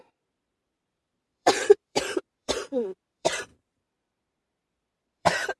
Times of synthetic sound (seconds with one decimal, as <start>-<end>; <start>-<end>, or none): 0.0-5.6